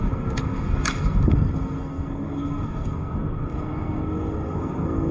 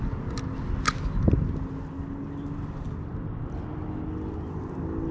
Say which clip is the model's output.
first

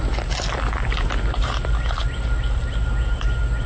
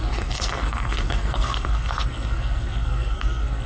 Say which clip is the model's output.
second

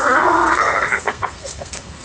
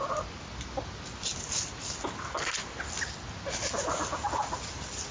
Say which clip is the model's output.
first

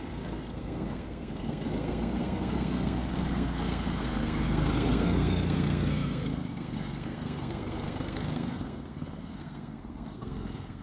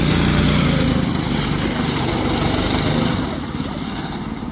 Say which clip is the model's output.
first